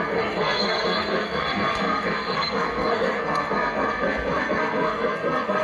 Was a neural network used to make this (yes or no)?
yes